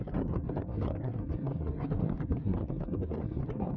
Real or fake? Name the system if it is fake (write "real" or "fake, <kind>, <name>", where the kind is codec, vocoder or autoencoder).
fake, codec, SNAC